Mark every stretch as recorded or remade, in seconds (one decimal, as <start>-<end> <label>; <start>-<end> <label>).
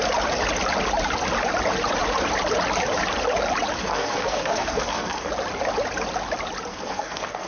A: 0.0-3.8 recorded; 3.8-5.3 remade; 5.3-6.7 recorded; 6.7-7.5 remade